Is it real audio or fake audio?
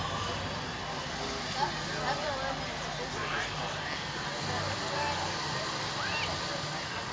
real